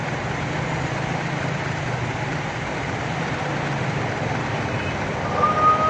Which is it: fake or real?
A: real